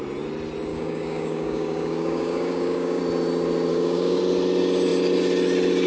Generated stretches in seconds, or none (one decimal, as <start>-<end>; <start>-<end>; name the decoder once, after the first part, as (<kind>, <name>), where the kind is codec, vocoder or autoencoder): 0.7-3.0 (codec, DAC); 3.7-4.2